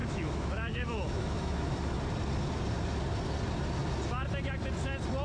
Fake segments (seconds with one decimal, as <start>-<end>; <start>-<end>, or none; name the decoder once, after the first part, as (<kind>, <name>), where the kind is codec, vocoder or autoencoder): 0.0-2.0 (autoencoder, DAC-VAE)

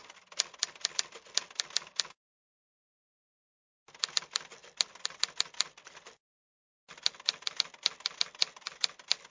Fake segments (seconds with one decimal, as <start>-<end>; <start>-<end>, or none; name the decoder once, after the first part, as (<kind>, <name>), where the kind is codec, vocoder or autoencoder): 4.6-7.5 (vocoder, BigVGAN v2)